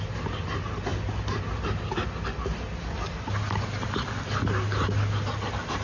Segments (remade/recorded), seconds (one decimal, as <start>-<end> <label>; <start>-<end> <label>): 0.0-5.8 recorded